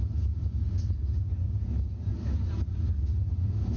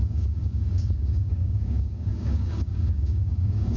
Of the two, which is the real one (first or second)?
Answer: first